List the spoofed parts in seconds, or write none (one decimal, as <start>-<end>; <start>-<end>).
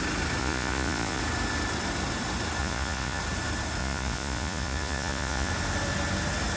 0.4-1.2; 2.6-3.2; 3.8-5.5